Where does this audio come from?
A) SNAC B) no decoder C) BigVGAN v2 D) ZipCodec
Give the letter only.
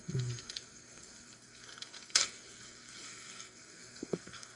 A